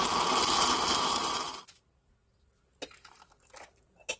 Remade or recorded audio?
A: recorded